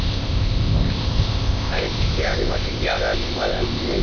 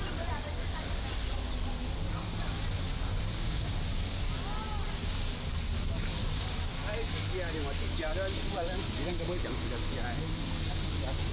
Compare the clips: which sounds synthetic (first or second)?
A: first